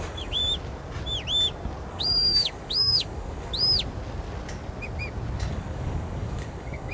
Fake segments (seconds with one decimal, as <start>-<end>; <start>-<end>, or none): 0.0-0.4; 1.9-3.5; 5.5-6.9